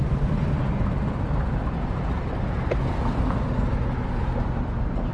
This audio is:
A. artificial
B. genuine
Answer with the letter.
B